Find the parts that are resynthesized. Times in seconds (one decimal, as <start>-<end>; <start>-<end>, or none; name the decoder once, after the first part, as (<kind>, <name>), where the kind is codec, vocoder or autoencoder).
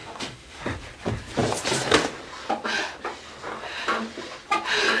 0.0-0.6 (autoencoder, DAC-VAE)